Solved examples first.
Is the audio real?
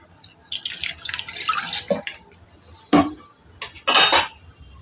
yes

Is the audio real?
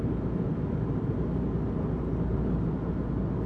yes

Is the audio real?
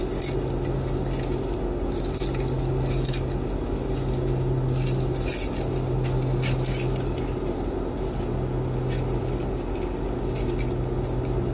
yes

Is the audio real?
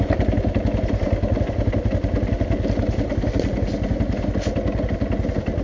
yes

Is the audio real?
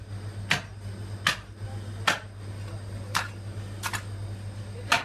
yes